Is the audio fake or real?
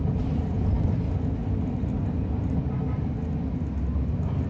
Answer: real